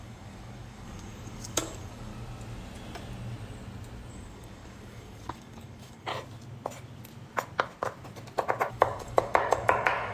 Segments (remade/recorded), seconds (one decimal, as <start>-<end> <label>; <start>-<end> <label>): 0.0-2.1 remade; 2.1-4.1 recorded; 4.1-6.1 remade; 6.1-8.7 recorded; 8.7-10.1 remade